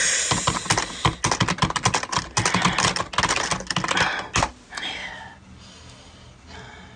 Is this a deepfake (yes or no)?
no